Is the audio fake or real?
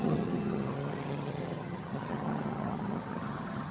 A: fake